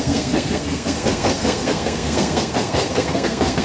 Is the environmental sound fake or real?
fake